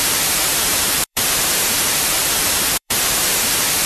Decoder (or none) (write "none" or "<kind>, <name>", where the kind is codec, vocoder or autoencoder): vocoder, BigVGAN v2